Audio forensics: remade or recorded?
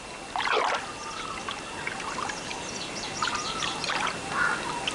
recorded